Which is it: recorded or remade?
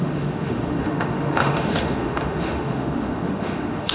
remade